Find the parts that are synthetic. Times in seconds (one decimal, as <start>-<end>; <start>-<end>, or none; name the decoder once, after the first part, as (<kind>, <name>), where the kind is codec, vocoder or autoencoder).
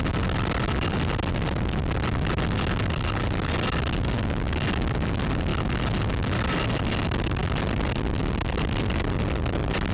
5.5-6.1 (vocoder, BigVGAN v2)